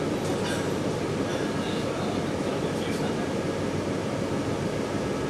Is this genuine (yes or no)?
yes